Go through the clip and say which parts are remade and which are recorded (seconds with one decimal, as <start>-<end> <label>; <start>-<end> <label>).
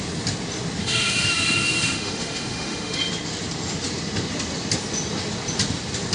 0.0-0.8 recorded; 0.8-3.1 remade; 3.1-6.1 recorded